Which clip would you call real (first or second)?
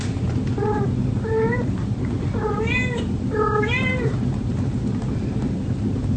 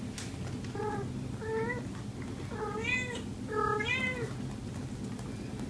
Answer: second